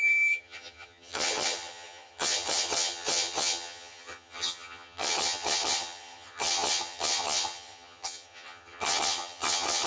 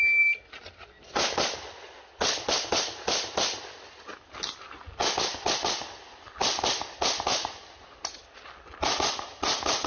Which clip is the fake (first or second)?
first